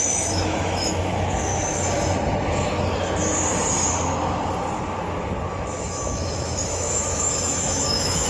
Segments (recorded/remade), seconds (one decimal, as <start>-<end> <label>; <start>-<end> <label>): 0.0-1.5 remade; 1.5-5.5 recorded; 5.5-8.3 remade